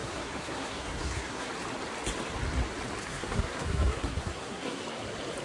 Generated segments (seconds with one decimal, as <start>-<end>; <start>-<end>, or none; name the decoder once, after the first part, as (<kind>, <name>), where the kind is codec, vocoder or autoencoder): 0.0-1.5 (codec, SNAC); 3.0-4.8

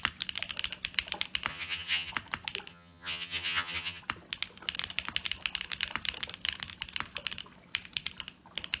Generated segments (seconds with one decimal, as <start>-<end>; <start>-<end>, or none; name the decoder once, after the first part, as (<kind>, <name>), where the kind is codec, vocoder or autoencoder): 1.5-2.1 (vocoder, HiFi-GAN); 2.7-4.0